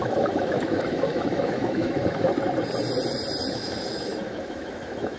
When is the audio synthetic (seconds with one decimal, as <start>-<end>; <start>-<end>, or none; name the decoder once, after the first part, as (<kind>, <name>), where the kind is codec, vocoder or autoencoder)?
0.0-2.3 (autoencoder, DAC-VAE); 3.5-5.2